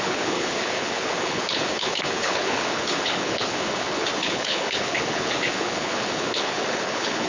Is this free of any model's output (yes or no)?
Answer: no